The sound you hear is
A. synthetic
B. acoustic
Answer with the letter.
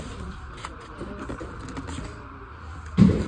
A